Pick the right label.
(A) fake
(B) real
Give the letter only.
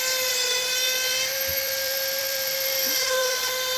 A